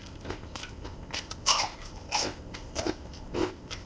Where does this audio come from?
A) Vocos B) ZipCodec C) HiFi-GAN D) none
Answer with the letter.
B